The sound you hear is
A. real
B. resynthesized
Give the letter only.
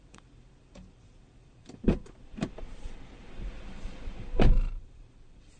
B